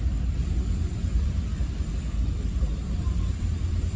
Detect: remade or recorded remade